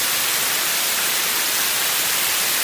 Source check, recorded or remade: recorded